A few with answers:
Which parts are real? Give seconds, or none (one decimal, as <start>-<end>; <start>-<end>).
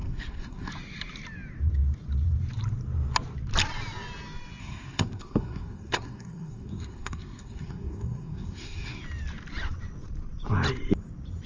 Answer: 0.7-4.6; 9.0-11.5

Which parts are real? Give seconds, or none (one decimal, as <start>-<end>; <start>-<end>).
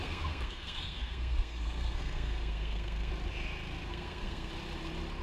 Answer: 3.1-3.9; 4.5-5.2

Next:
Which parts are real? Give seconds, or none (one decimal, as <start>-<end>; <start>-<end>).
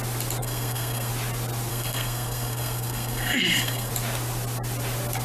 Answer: 0.0-0.4; 1.1-1.7; 3.9-5.2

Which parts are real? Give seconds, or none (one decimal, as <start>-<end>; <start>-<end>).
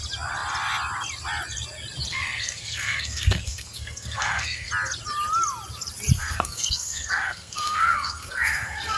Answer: 0.0-2.1; 4.7-6.2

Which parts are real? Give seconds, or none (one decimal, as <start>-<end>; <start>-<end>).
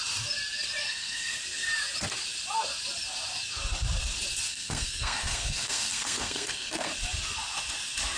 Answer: 0.0-0.8; 1.4-4.5; 6.9-8.2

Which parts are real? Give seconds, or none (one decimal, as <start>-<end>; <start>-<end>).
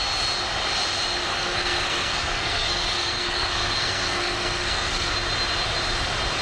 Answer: 0.0-1.3; 5.1-6.4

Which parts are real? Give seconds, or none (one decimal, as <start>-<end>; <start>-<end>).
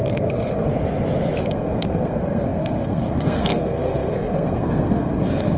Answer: 0.7-1.4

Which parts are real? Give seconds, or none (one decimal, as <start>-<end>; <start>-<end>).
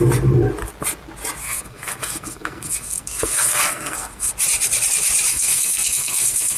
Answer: 0.0-1.4; 4.3-5.3